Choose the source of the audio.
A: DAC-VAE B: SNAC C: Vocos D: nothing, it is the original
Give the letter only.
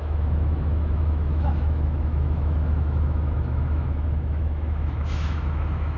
A